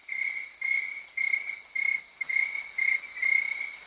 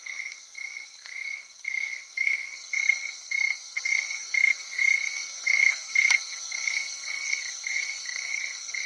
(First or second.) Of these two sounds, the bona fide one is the first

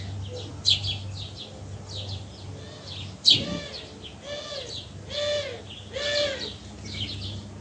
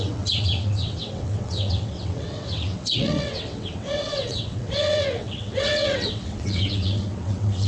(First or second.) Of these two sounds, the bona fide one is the first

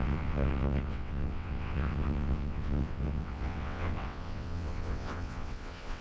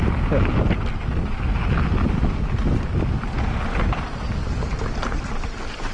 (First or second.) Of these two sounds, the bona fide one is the second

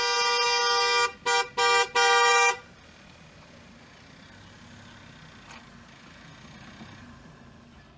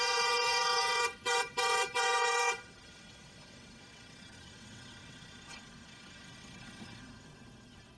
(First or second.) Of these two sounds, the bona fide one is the first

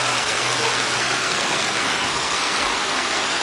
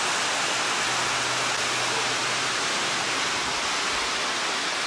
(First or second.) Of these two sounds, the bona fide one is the second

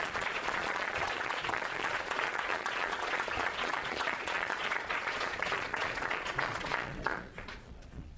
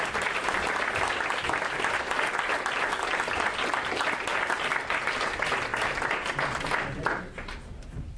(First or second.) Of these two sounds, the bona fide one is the second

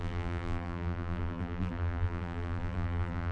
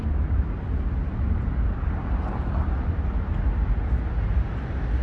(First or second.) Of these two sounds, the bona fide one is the second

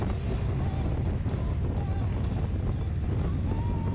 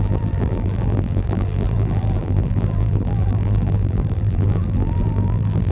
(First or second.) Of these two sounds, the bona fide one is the first